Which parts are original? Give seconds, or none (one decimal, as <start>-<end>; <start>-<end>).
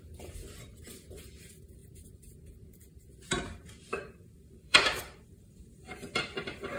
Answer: none